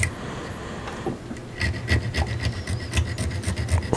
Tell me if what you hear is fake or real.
real